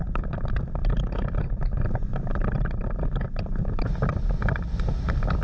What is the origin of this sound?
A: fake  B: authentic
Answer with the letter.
B